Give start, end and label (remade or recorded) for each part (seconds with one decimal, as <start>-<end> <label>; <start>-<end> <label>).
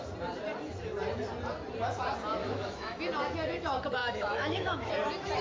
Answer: 0.0-2.4 recorded; 2.4-3.0 remade; 3.0-4.0 recorded; 4.0-4.9 remade; 4.9-5.4 recorded